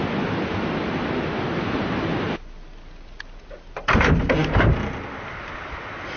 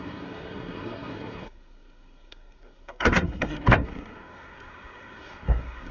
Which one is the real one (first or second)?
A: first